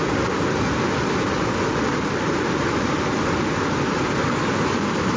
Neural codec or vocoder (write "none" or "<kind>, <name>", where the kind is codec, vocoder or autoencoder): none